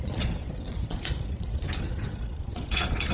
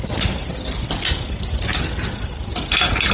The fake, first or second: first